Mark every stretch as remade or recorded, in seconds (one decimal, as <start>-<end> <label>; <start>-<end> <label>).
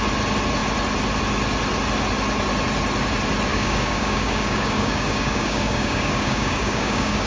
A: 0.0-3.5 recorded; 3.5-7.3 remade